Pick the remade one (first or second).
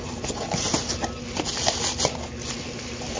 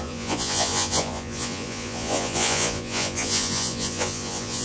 second